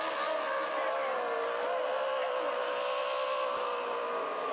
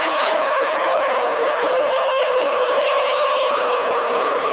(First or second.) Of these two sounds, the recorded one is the first